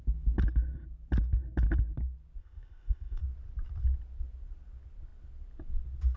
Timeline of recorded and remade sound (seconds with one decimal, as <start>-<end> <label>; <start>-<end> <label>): 0.0-2.4 recorded; 2.4-3.2 remade; 3.2-6.2 recorded